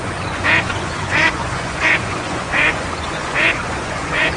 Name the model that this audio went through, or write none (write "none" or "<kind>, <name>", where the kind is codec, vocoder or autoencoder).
vocoder, Vocos